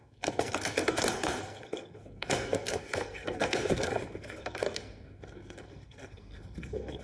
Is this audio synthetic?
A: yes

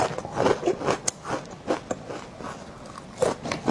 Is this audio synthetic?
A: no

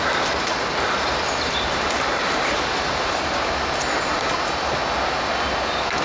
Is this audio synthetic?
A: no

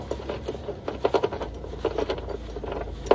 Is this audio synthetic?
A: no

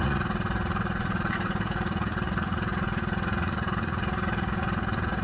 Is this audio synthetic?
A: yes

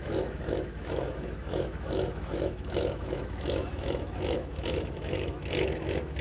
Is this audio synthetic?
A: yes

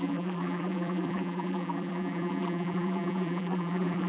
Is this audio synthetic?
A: yes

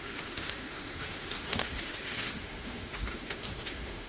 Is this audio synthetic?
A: yes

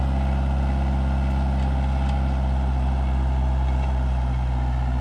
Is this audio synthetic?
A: no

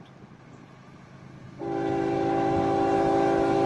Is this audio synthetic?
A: no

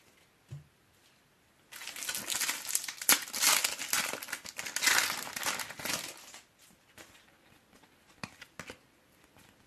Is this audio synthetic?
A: no